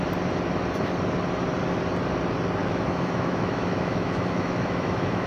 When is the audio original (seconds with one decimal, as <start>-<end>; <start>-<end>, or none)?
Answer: 0.0-2.6